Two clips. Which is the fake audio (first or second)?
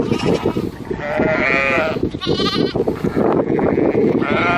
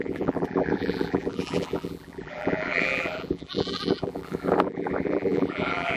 second